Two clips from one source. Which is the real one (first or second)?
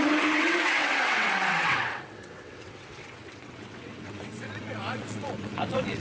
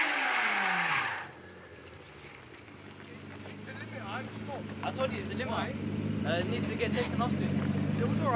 second